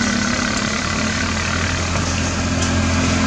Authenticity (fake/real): real